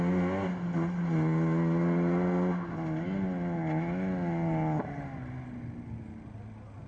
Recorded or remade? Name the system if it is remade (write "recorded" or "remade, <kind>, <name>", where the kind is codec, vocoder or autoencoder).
recorded